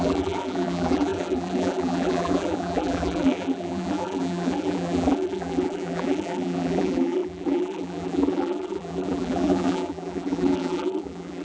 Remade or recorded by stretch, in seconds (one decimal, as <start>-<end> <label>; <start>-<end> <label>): 0.0-11.4 remade

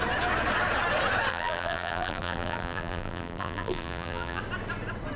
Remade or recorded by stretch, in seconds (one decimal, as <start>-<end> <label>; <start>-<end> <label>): 0.0-1.3 recorded; 1.3-4.4 remade; 4.4-5.2 recorded

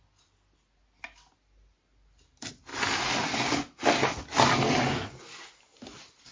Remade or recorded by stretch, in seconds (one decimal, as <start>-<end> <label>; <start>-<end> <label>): 0.0-6.3 recorded

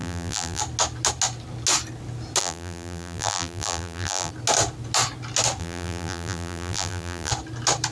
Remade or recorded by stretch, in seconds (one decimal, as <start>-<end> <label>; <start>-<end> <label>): 0.0-0.6 remade; 0.6-2.4 recorded; 2.4-4.3 remade; 4.3-5.6 recorded; 5.6-7.3 remade; 7.3-7.9 recorded

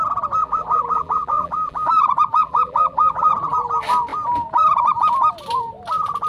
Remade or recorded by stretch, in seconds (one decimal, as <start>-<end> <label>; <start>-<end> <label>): 0.0-0.4 recorded; 0.4-1.9 remade; 1.9-2.4 recorded; 2.4-3.3 remade; 3.3-6.3 recorded

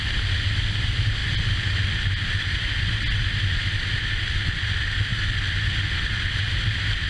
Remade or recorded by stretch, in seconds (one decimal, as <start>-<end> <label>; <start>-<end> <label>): 0.0-7.1 recorded